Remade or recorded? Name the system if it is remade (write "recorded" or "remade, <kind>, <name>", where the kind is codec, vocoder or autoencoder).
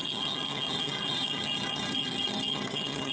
remade, vocoder, HiFi-GAN